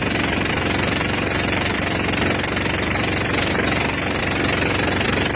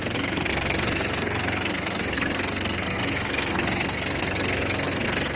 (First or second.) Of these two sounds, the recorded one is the first